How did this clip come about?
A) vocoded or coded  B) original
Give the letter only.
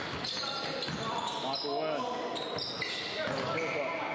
B